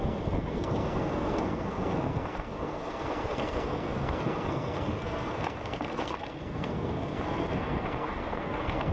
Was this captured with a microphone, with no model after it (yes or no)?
no